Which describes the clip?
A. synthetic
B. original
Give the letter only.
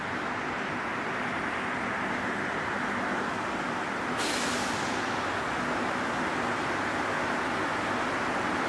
B